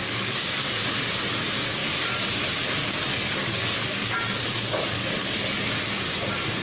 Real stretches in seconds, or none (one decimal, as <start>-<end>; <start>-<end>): 0.8-2.8; 5.6-6.6